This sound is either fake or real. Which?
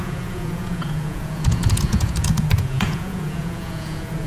fake